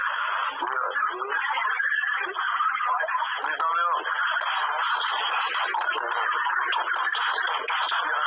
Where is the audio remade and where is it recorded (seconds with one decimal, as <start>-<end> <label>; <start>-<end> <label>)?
0.0-8.3 recorded